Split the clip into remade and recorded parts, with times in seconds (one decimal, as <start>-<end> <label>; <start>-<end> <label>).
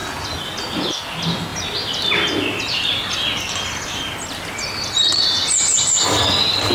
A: 0.0-6.7 recorded